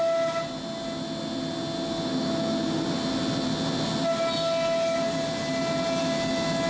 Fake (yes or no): no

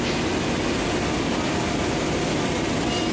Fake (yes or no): no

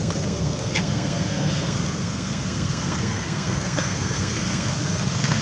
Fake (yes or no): yes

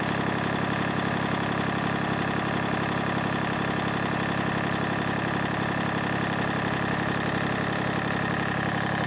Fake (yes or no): yes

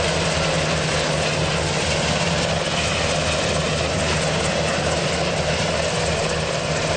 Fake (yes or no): no